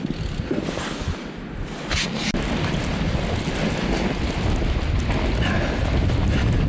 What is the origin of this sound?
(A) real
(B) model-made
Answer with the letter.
A